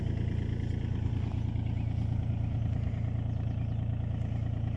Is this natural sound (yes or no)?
yes